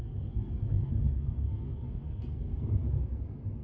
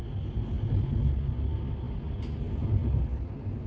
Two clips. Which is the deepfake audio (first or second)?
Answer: first